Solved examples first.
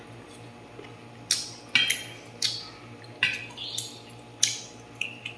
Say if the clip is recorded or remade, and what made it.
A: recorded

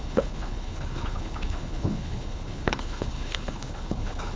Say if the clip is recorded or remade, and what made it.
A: remade, codec, HILCodec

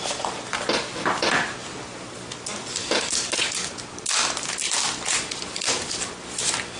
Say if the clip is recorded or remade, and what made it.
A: recorded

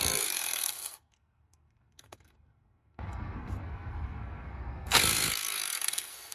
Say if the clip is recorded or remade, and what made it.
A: remade, codec, SNAC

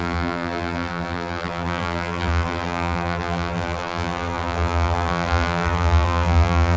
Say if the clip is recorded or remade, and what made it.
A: remade, vocoder, BigVGAN v2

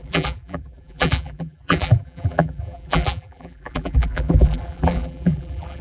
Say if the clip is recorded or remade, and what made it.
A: remade, vocoder, BigVGAN v2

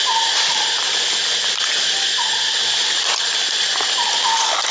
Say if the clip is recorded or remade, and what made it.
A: recorded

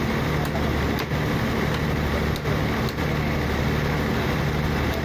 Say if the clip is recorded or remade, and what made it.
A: recorded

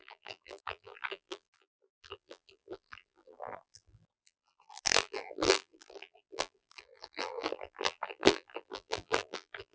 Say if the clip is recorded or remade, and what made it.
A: remade, vocoder, BigVGAN v2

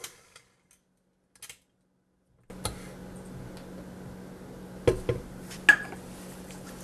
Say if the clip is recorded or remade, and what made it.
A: recorded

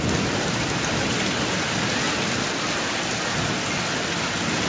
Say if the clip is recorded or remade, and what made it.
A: recorded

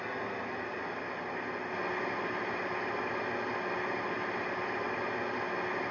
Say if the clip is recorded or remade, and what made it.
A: recorded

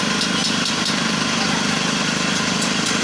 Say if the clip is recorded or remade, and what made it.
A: recorded